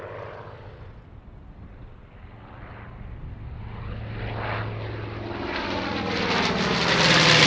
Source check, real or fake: real